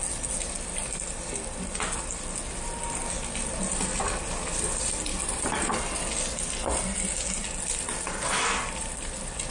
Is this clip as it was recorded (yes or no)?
yes